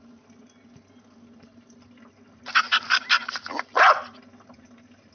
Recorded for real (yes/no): yes